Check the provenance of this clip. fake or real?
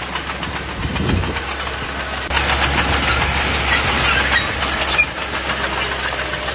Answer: real